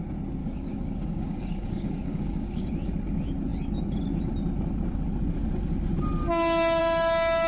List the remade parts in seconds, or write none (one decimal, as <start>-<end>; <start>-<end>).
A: 0.4-2.7

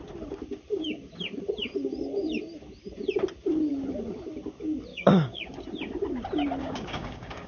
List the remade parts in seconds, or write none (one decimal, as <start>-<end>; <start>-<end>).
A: 4.9-5.5; 6.6-7.5